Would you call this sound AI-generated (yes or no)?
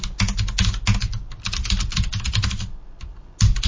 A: no